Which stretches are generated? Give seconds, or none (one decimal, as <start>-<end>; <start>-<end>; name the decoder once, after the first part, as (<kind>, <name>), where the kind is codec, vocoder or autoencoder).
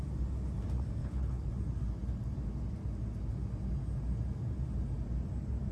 1.0-1.5 (codec, HILCodec)